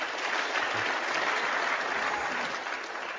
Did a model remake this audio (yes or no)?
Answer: no